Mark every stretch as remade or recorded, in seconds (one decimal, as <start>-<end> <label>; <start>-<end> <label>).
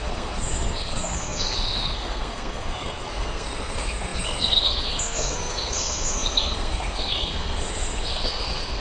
0.0-8.8 remade